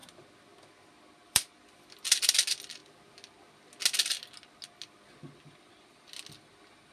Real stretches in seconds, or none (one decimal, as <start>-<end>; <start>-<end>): 0.0-1.2; 2.3-6.9